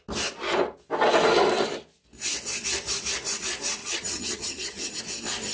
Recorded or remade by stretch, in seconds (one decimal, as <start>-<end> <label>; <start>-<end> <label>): 0.0-3.8 recorded; 3.8-5.0 remade; 5.0-5.5 recorded